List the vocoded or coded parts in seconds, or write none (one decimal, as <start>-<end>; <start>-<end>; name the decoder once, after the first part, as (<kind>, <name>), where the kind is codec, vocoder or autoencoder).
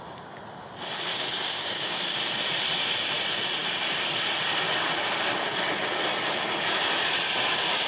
1.1-2.2 (codec, DAC)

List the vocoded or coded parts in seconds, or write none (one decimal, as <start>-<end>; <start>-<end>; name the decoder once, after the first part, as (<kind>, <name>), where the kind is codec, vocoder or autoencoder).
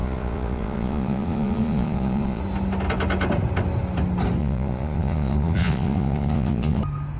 0.0-2.4 (vocoder, Vocos); 4.4-6.8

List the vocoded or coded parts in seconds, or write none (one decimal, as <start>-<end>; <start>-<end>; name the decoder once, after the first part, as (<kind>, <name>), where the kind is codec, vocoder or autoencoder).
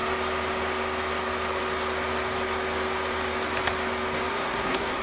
4.3-5.0 (codec, SNAC)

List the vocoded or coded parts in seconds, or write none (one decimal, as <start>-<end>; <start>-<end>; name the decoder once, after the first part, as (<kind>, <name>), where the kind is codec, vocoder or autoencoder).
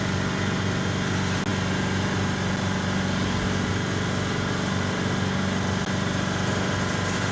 none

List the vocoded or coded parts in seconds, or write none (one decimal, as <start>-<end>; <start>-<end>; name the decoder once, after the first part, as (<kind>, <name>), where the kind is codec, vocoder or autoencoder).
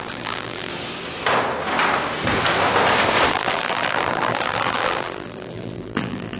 0.0-0.7 (vocoder, BigVGAN v2); 3.3-6.4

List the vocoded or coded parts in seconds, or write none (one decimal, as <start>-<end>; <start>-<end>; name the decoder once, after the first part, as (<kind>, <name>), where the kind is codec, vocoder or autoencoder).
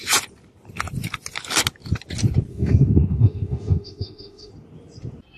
2.5-4.5 (autoencoder, DAC-VAE)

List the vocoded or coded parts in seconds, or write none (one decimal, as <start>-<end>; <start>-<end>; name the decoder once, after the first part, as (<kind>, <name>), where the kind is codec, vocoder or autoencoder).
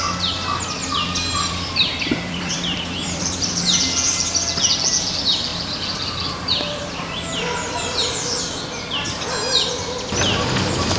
0.8-3.8 (vocoder, BigVGAN v2); 5.5-8.8